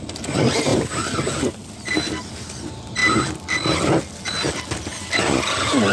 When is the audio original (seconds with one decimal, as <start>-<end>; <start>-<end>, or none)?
0.0-5.9